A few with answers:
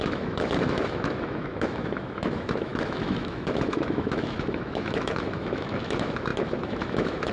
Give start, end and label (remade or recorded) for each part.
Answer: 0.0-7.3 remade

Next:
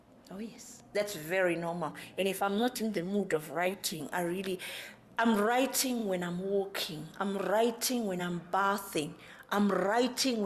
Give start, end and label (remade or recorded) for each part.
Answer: 0.0-1.9 recorded; 1.9-4.0 remade; 4.0-10.5 recorded

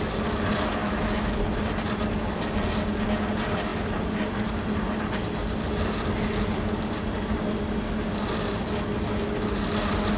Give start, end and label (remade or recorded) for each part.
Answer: 0.0-0.8 recorded; 0.8-1.3 remade; 1.3-10.2 recorded